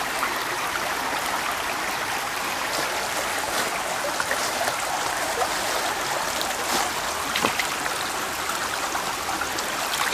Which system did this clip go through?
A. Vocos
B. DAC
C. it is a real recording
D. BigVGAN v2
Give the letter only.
C